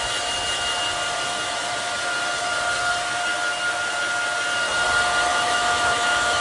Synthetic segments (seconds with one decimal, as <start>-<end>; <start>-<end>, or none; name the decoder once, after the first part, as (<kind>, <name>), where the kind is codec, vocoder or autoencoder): 5.3-6.4 (autoencoder, DAC-VAE)